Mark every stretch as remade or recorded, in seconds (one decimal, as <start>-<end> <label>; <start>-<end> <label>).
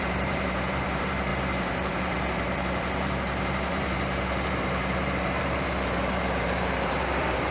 0.0-7.5 remade